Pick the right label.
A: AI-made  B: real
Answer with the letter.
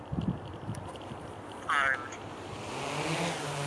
B